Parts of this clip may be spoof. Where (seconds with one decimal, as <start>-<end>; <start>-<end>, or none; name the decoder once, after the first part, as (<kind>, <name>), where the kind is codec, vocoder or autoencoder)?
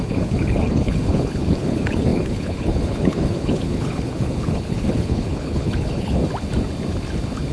0.0-6.2 (codec, HILCodec)